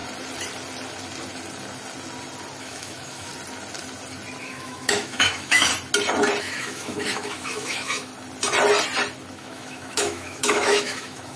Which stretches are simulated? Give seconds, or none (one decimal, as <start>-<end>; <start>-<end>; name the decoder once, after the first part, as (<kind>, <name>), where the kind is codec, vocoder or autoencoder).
2.6-3.3 (autoencoder, DAC-VAE); 4.4-5.7; 6.4-8.1; 9.3-11.4